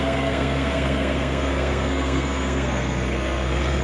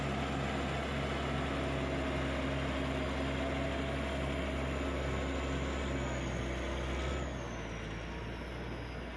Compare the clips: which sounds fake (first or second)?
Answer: first